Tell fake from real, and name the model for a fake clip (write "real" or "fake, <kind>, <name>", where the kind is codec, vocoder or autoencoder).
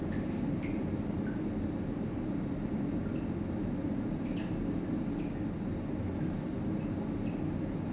real